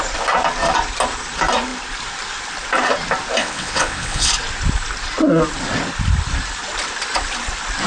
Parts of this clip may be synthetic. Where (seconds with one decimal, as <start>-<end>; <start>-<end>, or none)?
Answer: 3.4-4.3